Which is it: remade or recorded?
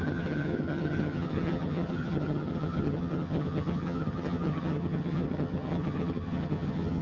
remade